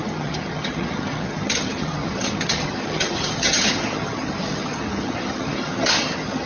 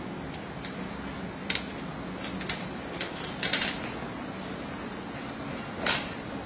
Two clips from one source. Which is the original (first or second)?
second